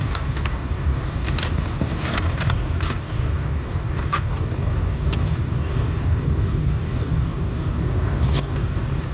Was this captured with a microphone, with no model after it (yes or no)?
no